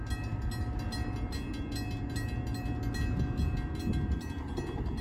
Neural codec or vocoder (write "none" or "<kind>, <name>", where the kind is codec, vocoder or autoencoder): none